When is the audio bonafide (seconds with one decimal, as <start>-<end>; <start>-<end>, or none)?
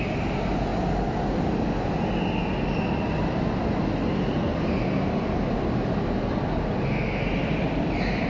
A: 0.0-8.3